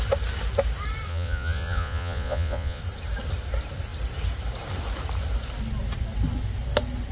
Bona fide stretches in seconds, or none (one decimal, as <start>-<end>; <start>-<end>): 0.0-1.1; 2.8-7.1

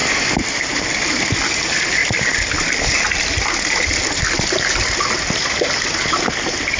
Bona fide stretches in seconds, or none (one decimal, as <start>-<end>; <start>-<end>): 0.0-6.8

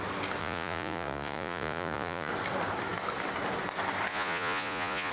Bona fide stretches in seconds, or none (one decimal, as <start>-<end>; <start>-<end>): 0.0-0.4; 2.3-4.1

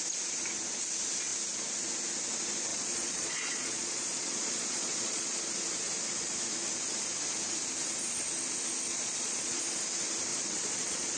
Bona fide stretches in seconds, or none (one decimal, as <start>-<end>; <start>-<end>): 0.0-2.7; 5.4-8.9; 9.6-10.3